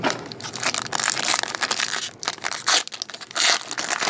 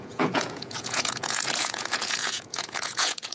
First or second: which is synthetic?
second